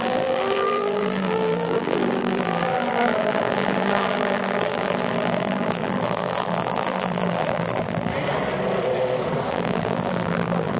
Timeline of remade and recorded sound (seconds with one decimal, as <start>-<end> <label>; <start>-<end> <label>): 0.0-8.1 remade; 8.1-9.5 recorded; 9.5-10.8 remade